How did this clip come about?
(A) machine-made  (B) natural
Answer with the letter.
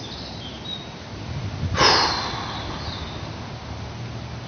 B